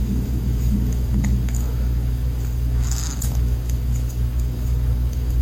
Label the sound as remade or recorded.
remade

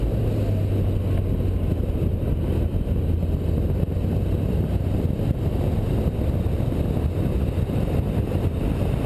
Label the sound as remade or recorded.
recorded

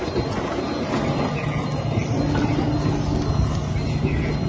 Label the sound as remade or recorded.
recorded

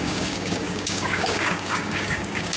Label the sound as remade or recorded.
remade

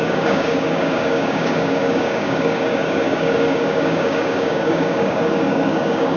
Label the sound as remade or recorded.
remade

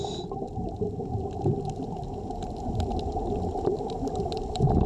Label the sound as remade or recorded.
recorded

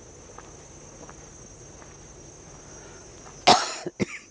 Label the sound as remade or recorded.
recorded